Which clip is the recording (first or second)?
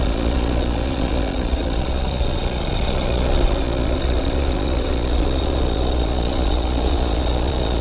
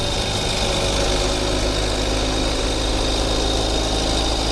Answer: second